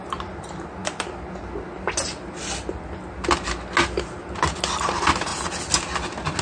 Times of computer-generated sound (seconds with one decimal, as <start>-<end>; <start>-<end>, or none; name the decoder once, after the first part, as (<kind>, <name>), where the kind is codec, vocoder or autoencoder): none